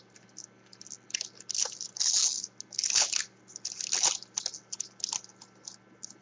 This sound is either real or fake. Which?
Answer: real